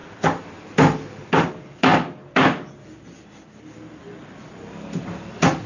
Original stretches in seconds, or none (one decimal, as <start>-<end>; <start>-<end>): 0.0-5.7